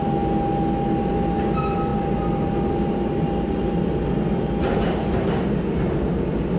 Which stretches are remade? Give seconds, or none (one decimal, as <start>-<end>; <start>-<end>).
none